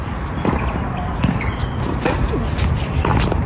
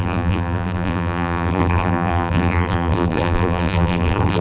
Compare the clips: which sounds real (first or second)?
first